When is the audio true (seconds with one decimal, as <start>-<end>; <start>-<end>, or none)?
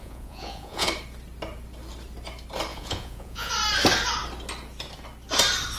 0.9-2.7; 3.5-5.8